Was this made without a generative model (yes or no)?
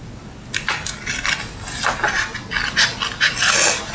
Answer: yes